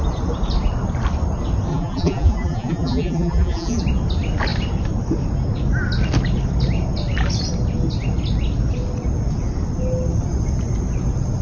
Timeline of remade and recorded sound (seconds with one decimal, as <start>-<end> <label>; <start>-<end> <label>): 0.0-1.7 recorded; 1.7-3.8 remade; 3.8-11.4 recorded